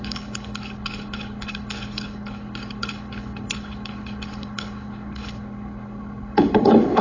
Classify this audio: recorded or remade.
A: remade